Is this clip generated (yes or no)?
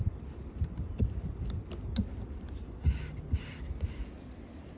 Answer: no